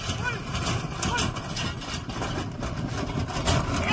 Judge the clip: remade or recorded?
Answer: recorded